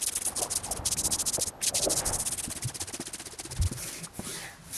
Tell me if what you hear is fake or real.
real